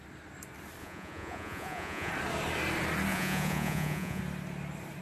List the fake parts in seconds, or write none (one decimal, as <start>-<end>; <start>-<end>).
0.8-2.1; 3.1-4.2